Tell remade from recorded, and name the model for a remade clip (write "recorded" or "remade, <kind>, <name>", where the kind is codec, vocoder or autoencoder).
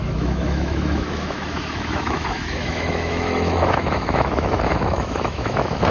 remade, autoencoder, DAC-VAE